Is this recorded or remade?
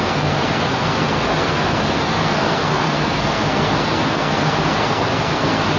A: remade